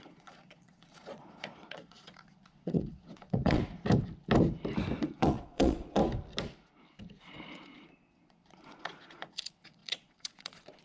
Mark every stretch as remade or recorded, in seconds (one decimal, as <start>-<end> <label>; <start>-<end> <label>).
0.0-3.6 remade; 3.6-5.0 recorded; 5.0-6.0 remade; 6.0-7.2 recorded; 7.2-10.8 remade